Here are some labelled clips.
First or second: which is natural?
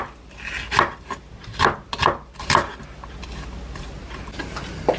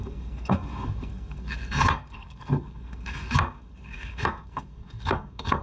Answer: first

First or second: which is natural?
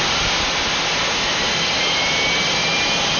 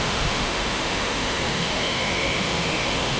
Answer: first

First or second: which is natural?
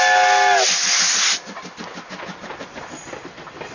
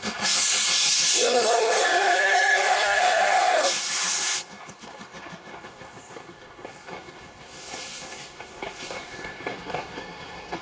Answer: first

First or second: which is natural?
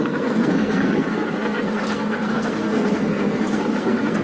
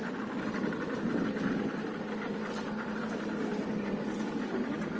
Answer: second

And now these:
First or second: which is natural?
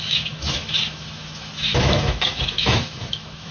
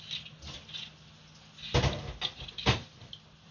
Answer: second